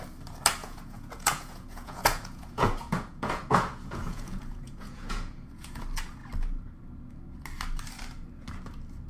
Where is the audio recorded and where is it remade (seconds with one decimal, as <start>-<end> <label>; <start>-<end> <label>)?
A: 0.0-0.6 recorded; 0.6-5.8 remade; 5.8-9.1 recorded